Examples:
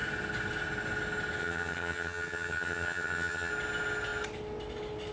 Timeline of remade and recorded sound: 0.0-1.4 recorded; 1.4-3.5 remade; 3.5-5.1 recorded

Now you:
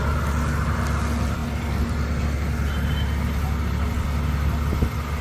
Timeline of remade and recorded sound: 0.0-5.2 recorded

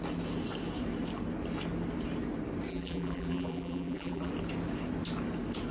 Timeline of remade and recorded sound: 0.0-2.7 recorded; 2.7-4.3 remade; 4.3-5.7 recorded

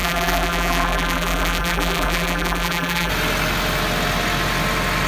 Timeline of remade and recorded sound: 0.0-3.1 remade; 3.1-5.1 recorded